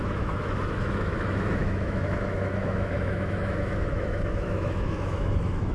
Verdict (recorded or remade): remade